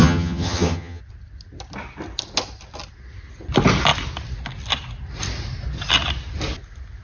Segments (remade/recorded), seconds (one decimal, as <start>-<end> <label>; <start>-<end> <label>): 0.0-1.0 remade; 1.0-7.0 recorded